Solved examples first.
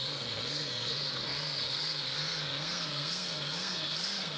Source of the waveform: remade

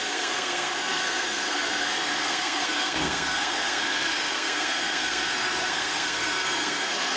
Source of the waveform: remade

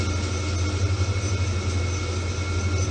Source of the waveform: recorded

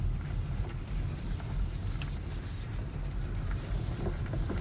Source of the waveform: recorded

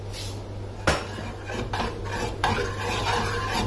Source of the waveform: recorded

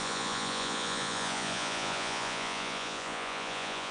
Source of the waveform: remade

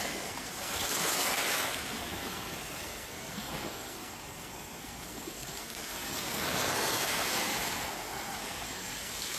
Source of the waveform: remade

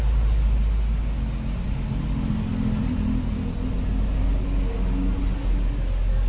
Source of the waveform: recorded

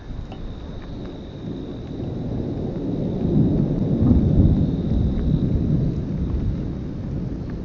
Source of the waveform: recorded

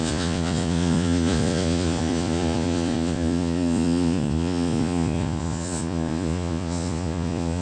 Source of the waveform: remade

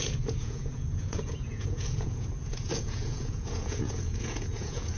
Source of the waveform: remade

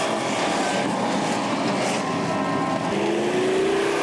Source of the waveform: recorded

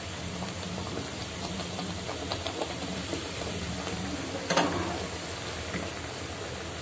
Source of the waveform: recorded